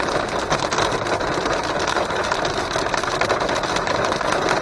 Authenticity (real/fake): real